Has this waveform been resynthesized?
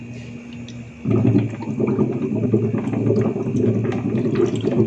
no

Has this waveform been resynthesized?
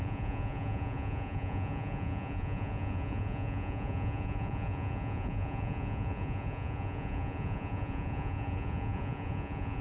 yes